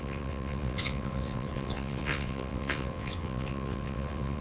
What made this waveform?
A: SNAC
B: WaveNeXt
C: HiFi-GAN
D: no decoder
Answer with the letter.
B